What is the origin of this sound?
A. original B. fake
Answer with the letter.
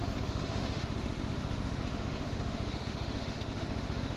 B